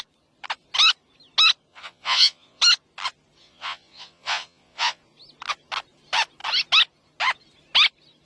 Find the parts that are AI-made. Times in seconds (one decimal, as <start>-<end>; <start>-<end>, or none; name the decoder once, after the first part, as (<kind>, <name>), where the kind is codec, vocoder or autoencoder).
1.7-2.6 (vocoder, Vocos); 3.4-5.0